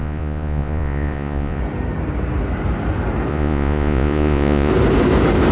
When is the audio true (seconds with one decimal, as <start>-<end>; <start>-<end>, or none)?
1.6-3.3; 4.7-5.5